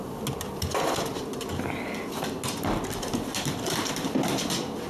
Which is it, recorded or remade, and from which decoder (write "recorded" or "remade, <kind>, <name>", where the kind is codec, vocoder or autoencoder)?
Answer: recorded